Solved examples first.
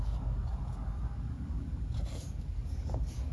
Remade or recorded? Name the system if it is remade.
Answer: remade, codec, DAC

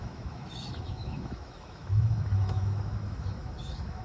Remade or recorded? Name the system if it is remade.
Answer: remade, autoencoder, DAC-VAE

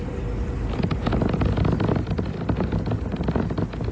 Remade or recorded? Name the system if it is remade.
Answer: recorded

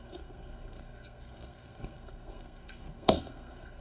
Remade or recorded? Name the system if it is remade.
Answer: remade, codec, SNAC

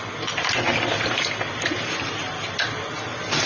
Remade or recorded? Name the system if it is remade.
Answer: recorded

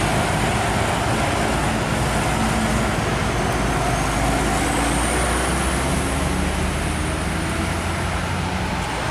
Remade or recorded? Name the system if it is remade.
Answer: recorded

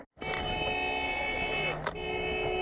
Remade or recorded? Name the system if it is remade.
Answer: recorded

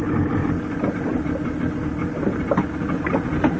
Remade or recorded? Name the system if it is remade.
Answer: recorded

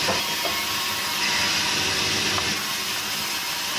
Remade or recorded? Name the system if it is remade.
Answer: recorded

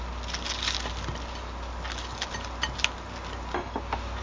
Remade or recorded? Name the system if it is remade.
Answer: recorded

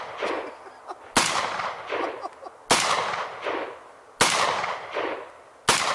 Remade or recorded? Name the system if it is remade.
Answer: recorded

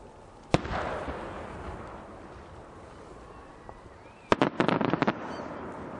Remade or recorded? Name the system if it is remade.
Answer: recorded